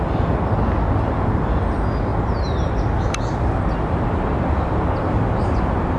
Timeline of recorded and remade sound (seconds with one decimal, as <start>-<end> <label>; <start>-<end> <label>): 0.0-2.1 recorded; 2.1-2.7 remade; 2.7-6.0 recorded